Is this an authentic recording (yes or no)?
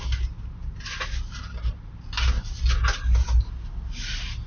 yes